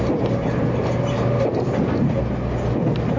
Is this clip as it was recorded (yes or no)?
yes